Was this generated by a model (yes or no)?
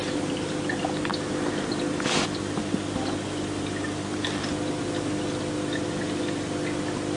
no